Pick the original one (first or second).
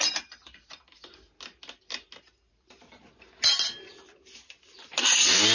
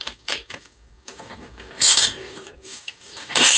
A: first